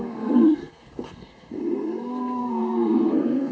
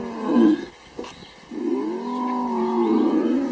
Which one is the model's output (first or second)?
first